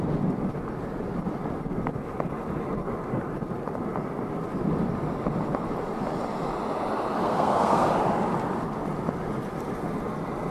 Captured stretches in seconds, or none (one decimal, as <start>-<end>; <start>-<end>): 0.0-7.2; 7.9-10.5